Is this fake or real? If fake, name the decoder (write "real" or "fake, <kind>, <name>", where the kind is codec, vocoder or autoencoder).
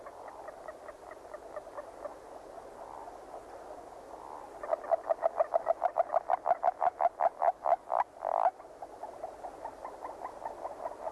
real